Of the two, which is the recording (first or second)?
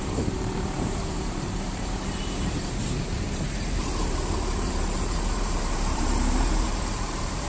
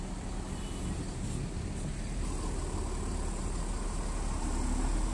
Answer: second